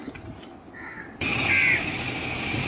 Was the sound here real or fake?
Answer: real